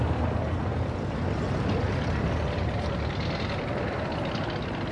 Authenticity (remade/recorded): recorded